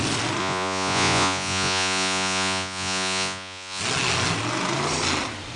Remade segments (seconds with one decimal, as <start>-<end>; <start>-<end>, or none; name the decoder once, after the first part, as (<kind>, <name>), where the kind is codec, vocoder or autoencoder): 0.4-3.8 (vocoder, Vocos)